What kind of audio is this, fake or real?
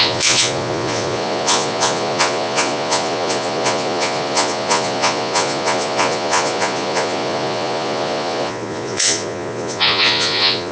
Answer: fake